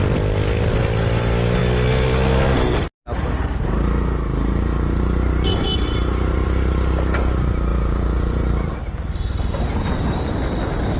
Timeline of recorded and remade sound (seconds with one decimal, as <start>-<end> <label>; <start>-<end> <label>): 0.0-7.7 recorded; 7.7-8.5 remade; 8.5-11.0 recorded

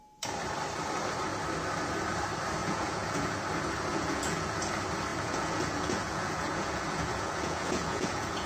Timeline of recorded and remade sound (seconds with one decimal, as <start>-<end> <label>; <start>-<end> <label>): 0.0-2.6 recorded; 2.6-3.4 remade; 3.4-3.9 recorded; 3.9-4.6 remade; 4.6-5.1 recorded; 5.1-8.5 remade

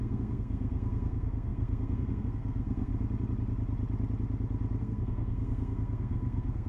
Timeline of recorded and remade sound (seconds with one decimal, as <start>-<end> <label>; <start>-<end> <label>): 0.0-2.9 remade; 2.9-4.8 recorded; 4.8-6.7 remade

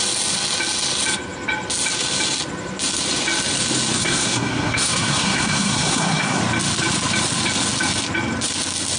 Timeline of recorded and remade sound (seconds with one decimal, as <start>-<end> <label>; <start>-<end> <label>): 0.0-4.0 recorded; 4.0-6.4 remade; 6.4-9.0 recorded

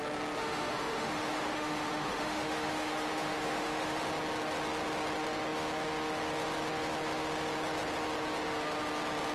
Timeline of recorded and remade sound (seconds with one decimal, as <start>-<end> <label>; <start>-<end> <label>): 0.0-0.4 recorded; 0.4-4.0 remade; 4.0-9.3 recorded

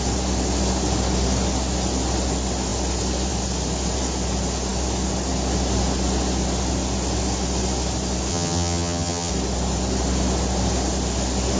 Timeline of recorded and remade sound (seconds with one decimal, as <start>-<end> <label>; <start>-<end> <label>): 0.0-8.3 recorded; 8.3-9.3 remade; 9.3-11.6 recorded

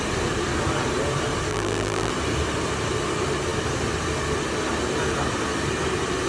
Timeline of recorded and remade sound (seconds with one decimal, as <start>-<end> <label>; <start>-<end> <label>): 0.0-1.5 recorded; 1.5-2.1 remade; 2.1-6.3 recorded